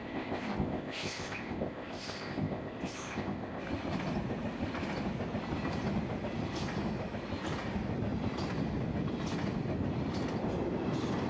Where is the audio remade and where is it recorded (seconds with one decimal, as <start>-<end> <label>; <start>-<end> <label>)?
0.0-3.6 remade; 3.6-11.3 recorded